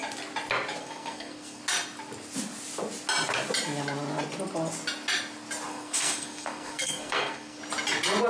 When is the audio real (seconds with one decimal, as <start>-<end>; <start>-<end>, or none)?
0.0-0.8; 1.6-5.7; 7.6-8.3